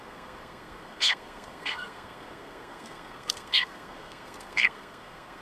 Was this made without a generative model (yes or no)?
no